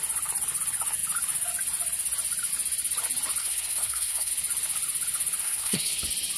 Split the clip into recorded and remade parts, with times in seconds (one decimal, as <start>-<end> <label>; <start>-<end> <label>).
0.0-3.4 recorded; 3.4-4.3 remade; 4.3-5.4 recorded; 5.4-6.0 remade; 6.0-6.4 recorded